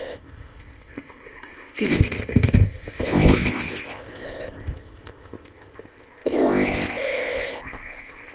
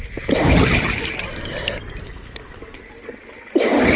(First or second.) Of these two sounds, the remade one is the first